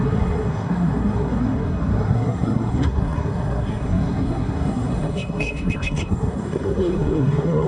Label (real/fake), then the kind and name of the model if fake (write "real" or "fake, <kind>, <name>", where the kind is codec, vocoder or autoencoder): fake, codec, SNAC